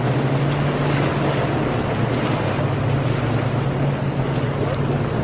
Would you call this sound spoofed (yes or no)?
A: no